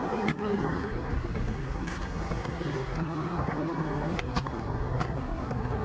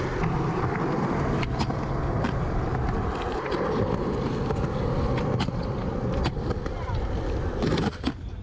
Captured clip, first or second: second